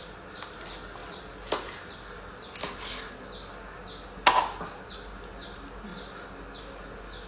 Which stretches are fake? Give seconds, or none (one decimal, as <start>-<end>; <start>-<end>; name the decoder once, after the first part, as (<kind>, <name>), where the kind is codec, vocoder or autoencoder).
none